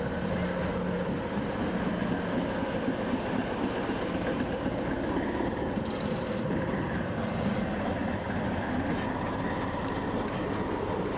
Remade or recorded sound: recorded